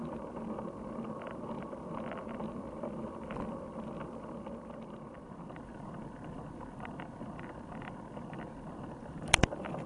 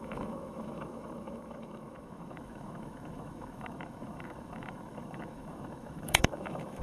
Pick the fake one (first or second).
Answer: second